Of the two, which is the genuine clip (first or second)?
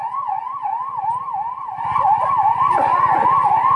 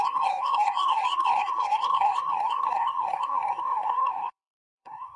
first